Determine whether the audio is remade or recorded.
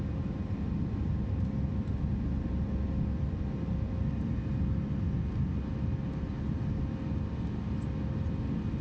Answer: recorded